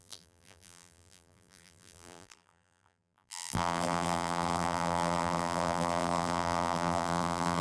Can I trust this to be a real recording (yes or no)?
no